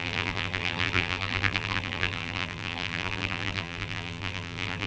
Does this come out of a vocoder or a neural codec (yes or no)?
yes